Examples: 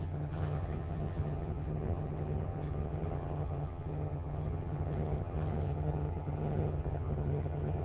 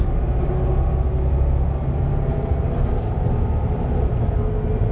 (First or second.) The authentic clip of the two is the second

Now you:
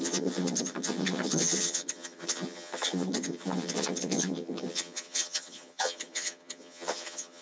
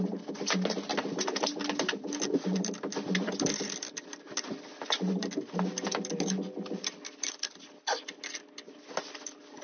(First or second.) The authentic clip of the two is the second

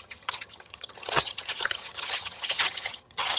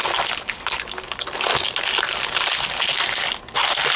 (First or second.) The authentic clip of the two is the second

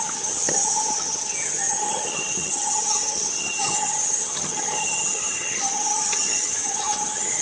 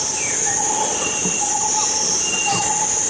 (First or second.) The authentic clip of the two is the second